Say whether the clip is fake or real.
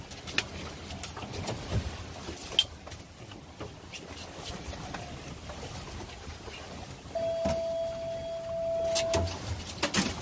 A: real